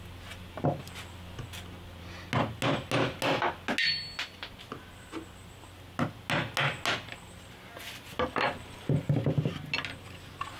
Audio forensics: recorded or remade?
recorded